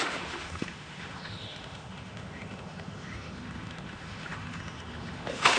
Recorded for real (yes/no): no